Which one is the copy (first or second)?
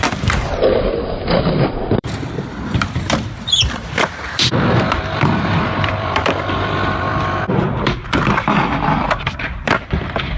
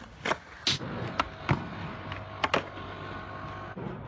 first